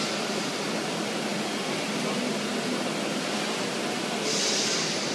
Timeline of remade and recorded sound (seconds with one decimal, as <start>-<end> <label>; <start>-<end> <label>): 0.0-5.1 recorded